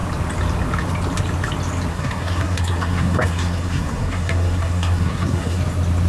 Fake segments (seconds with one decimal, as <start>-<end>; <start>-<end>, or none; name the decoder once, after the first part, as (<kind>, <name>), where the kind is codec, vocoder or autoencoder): 1.9-5.6 (codec, SNAC)